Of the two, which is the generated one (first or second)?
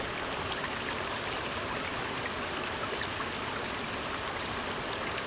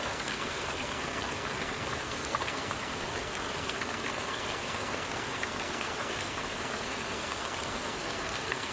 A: second